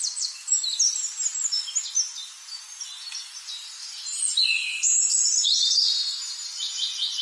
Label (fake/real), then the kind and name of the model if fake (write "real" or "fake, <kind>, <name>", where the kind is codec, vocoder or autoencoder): real